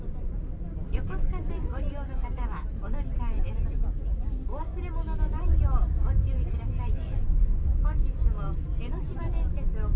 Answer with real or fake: real